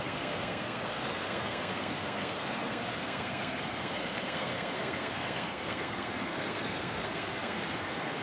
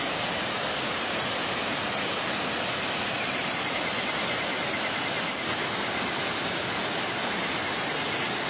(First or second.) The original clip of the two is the second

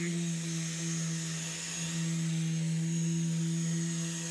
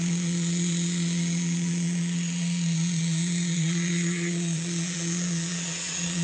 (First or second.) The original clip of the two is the first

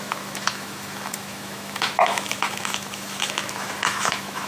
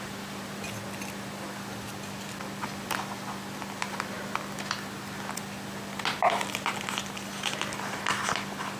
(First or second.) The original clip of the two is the second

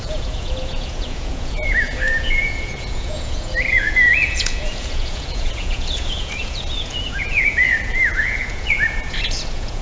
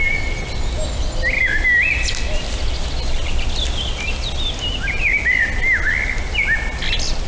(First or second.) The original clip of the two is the second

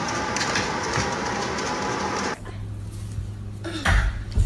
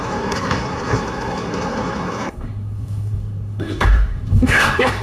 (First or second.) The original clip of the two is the first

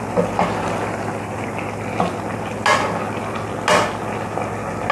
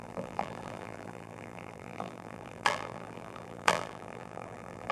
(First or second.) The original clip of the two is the first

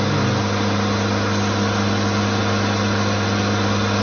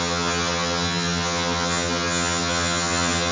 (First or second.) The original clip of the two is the first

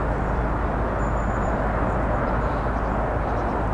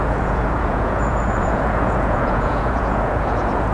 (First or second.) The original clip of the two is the first